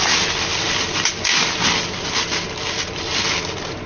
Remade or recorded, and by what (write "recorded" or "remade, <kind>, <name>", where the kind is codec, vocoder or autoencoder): recorded